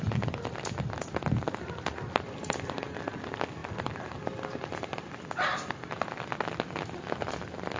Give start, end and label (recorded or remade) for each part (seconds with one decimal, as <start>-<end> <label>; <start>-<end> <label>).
0.0-7.8 recorded

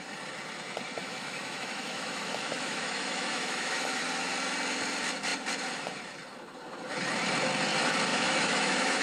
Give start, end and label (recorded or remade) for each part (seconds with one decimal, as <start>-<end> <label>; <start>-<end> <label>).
0.0-1.0 recorded; 1.0-4.0 remade; 4.0-8.1 recorded; 8.1-9.0 remade

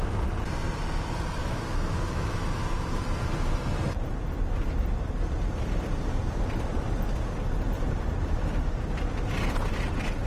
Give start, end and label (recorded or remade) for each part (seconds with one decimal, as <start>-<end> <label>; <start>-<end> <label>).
0.0-1.4 recorded; 1.4-3.0 remade; 3.0-10.3 recorded

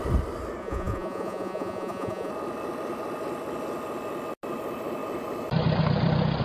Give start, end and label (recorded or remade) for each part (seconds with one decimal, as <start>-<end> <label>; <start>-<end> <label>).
0.0-0.6 recorded; 0.6-2.3 remade; 2.3-6.4 recorded

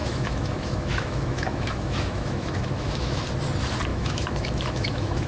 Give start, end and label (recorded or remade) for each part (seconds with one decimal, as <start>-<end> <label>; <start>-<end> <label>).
0.0-3.2 remade; 3.2-3.9 recorded; 3.9-5.3 remade

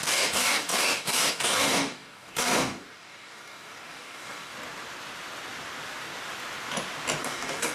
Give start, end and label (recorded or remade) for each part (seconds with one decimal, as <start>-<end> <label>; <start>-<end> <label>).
0.0-4.5 remade; 4.5-7.2 recorded; 7.2-7.7 remade